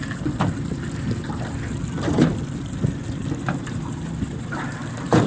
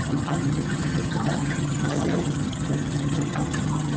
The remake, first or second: second